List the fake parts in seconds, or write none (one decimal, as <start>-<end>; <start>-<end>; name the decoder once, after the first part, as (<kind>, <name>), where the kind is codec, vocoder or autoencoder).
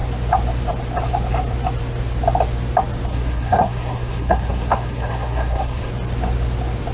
3.1-5.9 (codec, SNAC)